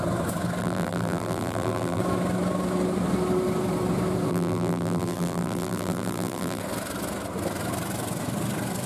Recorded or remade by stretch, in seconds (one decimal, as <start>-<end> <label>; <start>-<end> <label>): 0.0-0.6 recorded; 0.6-2.0 remade; 2.0-4.3 recorded; 4.3-6.6 remade; 6.6-8.9 recorded